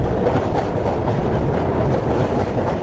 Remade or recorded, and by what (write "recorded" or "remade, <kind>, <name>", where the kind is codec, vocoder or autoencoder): remade, vocoder, BigVGAN v2